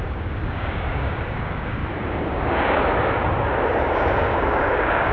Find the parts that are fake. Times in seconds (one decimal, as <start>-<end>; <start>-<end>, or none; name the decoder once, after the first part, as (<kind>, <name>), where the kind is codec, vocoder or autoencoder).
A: 0.0-1.8 (codec, DAC); 2.3-2.8; 3.8-5.1